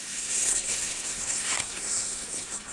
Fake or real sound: fake